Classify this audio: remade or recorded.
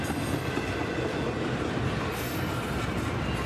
recorded